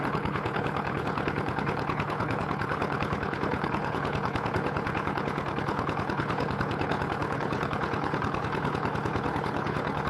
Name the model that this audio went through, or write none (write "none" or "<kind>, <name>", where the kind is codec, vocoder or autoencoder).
codec, HILCodec